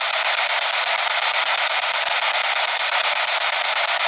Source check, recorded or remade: recorded